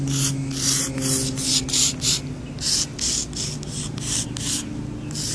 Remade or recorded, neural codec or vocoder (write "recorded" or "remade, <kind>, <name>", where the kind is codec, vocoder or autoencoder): recorded